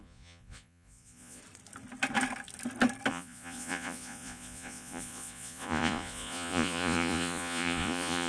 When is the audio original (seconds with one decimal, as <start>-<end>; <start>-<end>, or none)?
1.4-3.1